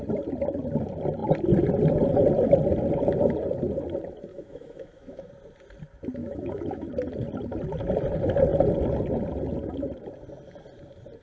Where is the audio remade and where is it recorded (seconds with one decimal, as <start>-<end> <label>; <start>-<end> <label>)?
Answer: 0.0-4.3 recorded; 4.3-5.3 remade; 5.3-6.2 recorded; 6.2-6.9 remade; 6.9-11.2 recorded